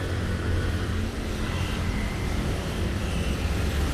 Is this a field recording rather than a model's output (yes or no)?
no